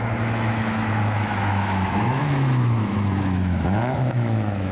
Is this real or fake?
fake